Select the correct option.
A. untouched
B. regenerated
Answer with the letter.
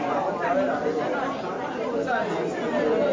A